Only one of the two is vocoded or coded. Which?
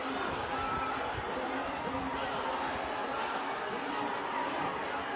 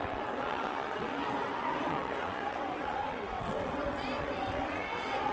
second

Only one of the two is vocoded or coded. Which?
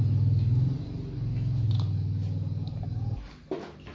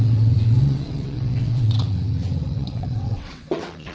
second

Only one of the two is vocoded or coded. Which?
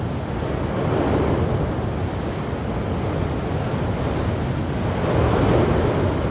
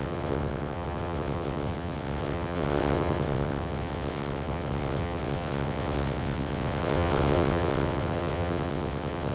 second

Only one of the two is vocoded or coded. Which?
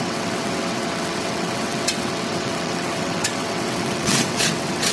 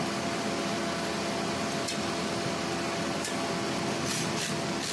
first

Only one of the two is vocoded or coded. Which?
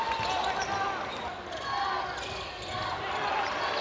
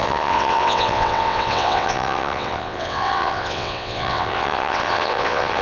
second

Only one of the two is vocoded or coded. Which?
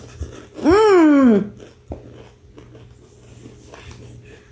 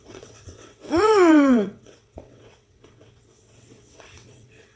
second